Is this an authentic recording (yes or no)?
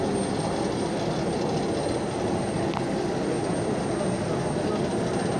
yes